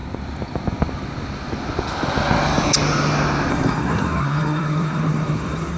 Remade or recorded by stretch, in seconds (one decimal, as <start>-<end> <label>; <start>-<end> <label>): 0.0-3.5 recorded; 3.5-5.8 remade